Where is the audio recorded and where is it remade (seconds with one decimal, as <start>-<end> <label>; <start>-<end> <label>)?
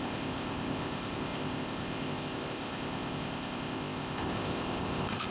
0.0-5.3 remade